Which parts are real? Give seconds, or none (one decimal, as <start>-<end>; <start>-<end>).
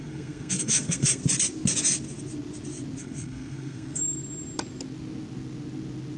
1.2-3.0; 4.0-6.2